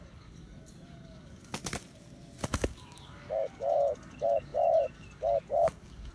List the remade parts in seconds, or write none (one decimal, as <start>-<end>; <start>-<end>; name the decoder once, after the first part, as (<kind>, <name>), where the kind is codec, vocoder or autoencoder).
0.0-1.6 (codec, DAC); 2.4-6.1